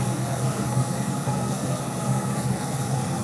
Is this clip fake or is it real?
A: fake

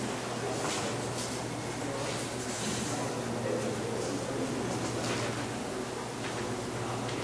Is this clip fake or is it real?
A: real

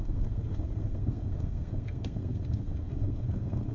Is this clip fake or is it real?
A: fake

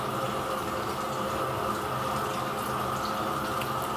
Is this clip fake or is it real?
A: real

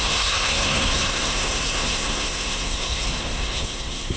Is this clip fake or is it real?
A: fake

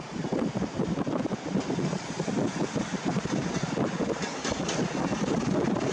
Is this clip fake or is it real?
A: real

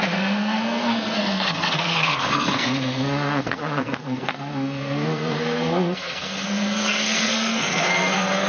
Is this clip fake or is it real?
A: fake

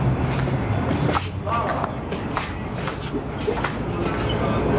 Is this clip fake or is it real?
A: real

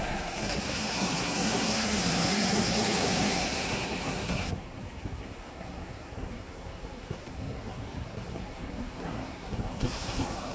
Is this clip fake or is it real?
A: fake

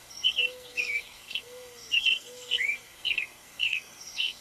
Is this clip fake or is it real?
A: fake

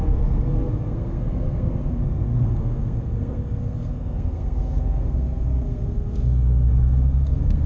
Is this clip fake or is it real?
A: fake